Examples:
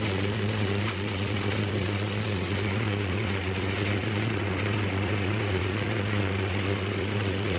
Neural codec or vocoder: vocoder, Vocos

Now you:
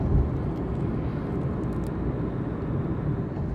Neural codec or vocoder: none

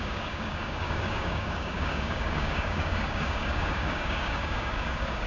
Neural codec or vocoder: codec, DAC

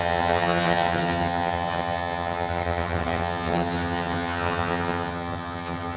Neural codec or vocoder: vocoder, HiFi-GAN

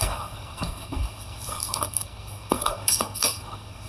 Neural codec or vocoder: codec, SNAC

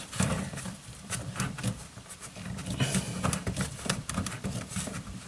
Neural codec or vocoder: vocoder, BigVGAN v2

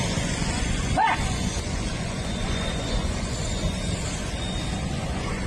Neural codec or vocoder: vocoder, Vocos